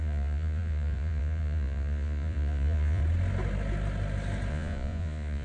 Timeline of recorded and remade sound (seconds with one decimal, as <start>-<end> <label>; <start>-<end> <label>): 0.0-3.0 remade; 3.0-4.5 recorded; 4.5-5.4 remade